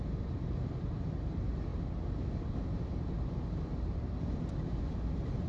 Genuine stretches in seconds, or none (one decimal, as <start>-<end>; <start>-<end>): 0.0-5.5

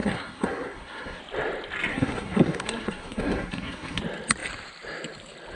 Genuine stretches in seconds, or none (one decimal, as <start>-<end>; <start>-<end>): 1.2-1.9; 4.0-5.6

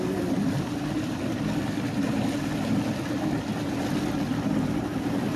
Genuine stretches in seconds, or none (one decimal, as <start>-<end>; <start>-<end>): 0.0-5.4

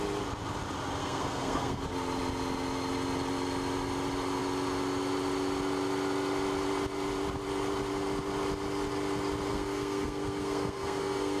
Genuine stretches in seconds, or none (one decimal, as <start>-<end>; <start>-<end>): 0.0-1.0; 1.8-9.5